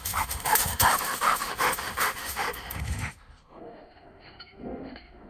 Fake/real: fake